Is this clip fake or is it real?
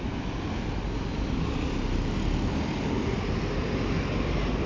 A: real